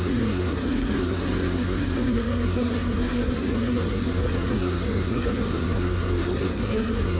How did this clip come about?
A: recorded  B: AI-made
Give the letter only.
B